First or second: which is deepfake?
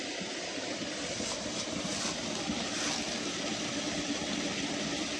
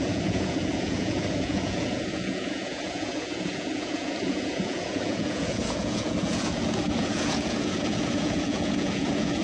second